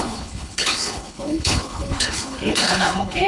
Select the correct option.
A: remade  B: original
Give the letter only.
A